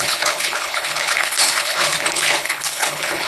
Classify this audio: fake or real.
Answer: fake